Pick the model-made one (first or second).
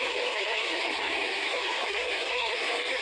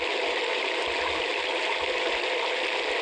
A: first